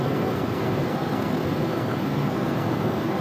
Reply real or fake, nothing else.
fake